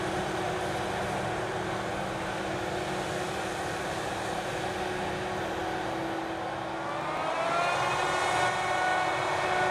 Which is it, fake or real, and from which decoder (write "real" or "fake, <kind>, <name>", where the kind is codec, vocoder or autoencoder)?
real